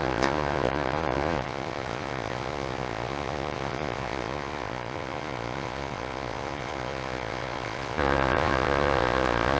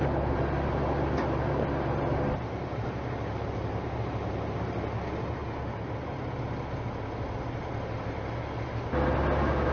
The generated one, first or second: first